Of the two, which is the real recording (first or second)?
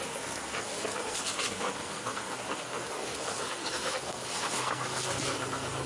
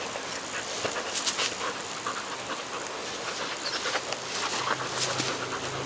second